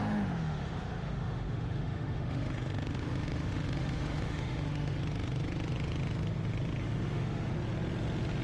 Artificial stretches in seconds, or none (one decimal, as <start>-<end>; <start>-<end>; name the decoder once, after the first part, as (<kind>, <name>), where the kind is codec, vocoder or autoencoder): 0.0-5.0 (autoencoder, DAC-VAE); 6.8-7.5